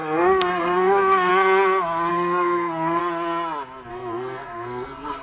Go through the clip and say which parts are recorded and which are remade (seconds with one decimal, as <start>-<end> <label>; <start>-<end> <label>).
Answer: 0.0-1.3 remade; 1.3-2.1 recorded; 2.1-3.0 remade; 3.0-3.9 recorded; 3.9-5.2 remade